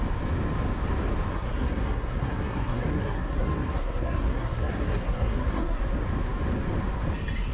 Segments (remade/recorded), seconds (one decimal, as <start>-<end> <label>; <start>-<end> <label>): 0.0-1.3 recorded; 1.3-5.8 remade; 5.8-7.5 recorded